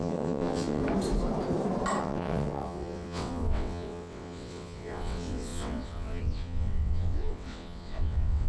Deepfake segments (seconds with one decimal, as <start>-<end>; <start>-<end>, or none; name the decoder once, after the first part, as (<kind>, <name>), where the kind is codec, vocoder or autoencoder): 0.0-0.8 (vocoder, WaveNeXt); 2.0-8.5